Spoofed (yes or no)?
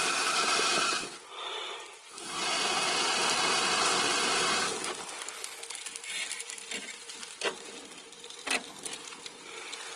no